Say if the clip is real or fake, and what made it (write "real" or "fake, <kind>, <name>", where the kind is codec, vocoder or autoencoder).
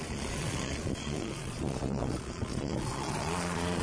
fake, vocoder, Vocos